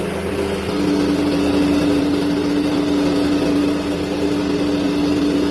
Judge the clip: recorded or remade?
recorded